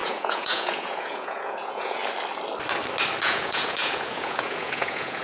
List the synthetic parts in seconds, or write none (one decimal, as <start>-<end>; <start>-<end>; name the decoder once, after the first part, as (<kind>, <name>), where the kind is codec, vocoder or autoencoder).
0.0-2.0 (vocoder, Vocos); 3.2-5.2